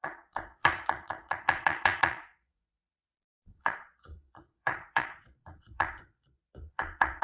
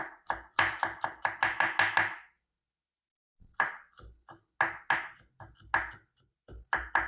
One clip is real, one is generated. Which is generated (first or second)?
first